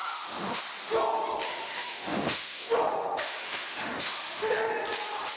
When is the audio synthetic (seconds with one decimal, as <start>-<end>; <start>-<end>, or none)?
0.0-0.6; 1.5-4.7